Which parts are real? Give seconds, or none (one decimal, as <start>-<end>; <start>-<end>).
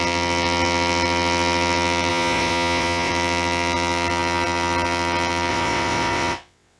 0.0-2.1; 3.1-5.5